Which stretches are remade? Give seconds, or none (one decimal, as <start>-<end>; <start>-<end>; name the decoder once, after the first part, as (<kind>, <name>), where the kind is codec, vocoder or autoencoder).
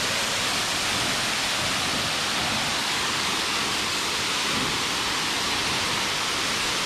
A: 2.7-4.1 (codec, DAC)